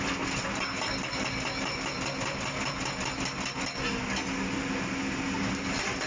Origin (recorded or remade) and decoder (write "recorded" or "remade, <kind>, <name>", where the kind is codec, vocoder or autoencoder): recorded